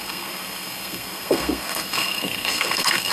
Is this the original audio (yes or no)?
no